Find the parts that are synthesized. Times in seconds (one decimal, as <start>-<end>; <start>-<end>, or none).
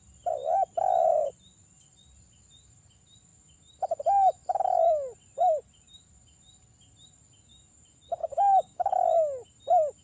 8.2-8.9